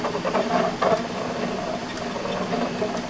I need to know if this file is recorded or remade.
recorded